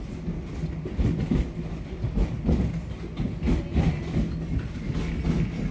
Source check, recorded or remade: recorded